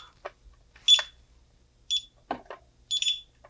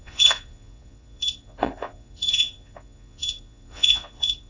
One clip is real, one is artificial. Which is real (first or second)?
first